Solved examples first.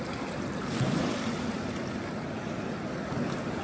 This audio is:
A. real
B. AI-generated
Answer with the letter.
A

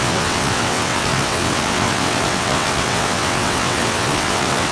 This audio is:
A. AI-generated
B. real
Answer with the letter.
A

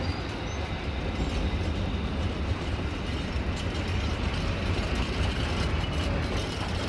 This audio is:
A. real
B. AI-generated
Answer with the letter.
A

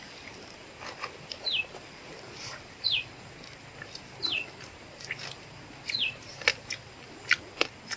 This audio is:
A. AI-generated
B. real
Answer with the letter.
B